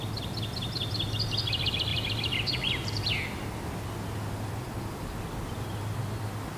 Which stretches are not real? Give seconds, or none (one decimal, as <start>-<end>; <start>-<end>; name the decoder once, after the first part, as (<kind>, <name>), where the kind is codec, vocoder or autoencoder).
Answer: 1.9-2.5 (vocoder, BigVGAN v2)

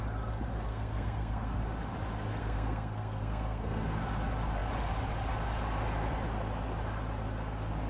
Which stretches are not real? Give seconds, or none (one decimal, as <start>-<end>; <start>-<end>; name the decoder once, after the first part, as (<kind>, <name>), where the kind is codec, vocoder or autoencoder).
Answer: 0.7-1.6 (codec, SNAC); 2.4-4.0

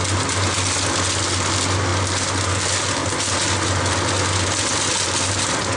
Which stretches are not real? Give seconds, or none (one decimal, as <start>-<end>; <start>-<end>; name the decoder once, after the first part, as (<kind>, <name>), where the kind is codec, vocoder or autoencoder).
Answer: none

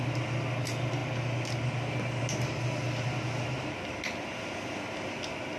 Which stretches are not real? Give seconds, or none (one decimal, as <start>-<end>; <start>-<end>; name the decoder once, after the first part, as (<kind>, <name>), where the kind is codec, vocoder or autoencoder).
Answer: none

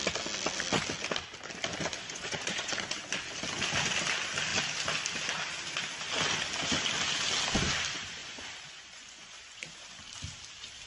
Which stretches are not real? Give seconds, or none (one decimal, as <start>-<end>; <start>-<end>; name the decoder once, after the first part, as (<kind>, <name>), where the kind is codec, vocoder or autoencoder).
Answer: 2.0-2.7 (vocoder, Vocos); 8.2-10.0

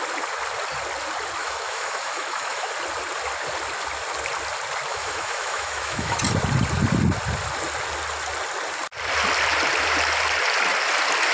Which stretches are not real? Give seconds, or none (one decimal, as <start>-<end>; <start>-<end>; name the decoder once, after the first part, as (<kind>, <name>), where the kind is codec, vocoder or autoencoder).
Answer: 1.4-2.7 (autoencoder, DAC-VAE); 4.9-6.2